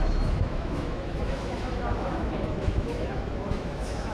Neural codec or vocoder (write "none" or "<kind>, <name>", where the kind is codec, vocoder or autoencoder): autoencoder, DAC-VAE